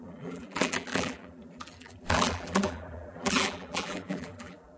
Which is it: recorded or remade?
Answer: remade